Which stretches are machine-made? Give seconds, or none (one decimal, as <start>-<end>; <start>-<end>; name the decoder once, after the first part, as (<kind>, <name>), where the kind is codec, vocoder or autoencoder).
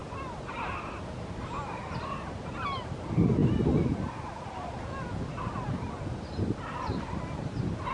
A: none